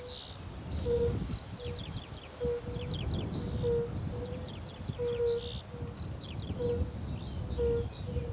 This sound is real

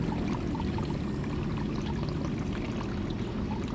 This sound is real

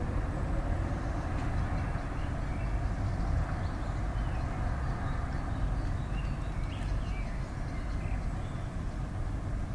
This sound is real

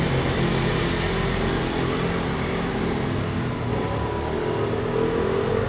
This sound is real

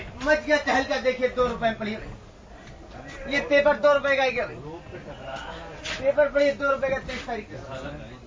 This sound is real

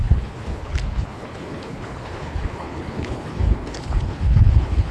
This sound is fake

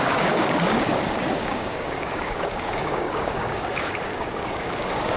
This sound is fake